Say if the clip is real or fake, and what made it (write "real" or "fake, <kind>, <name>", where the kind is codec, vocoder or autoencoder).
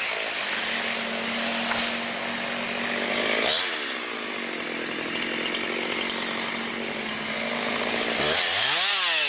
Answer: real